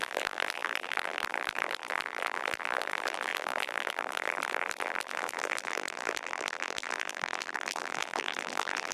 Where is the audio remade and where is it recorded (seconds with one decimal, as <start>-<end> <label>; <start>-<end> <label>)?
0.0-8.9 remade